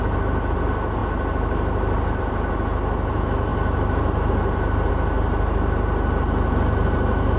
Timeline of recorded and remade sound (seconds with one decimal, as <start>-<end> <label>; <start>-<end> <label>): 0.0-7.4 recorded